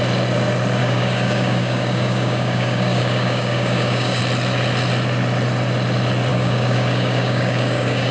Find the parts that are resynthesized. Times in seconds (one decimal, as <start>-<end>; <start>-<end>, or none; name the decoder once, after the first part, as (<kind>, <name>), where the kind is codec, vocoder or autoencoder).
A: 0.8-4.2 (codec, DAC); 6.3-8.1